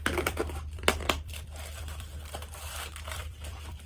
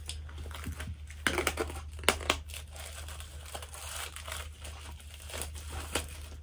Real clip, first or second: second